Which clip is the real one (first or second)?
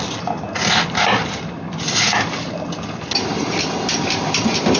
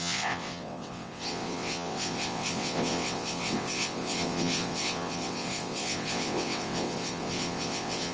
first